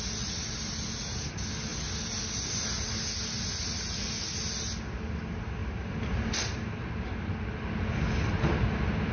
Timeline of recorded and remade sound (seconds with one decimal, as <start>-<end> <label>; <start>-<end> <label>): 0.0-5.6 recorded; 5.6-7.2 remade; 7.2-9.1 recorded